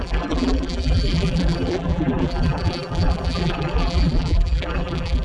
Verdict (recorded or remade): remade